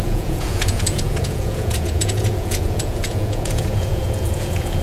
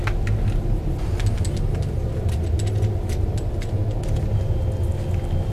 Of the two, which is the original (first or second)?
second